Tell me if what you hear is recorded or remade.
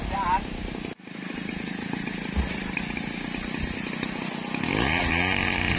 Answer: recorded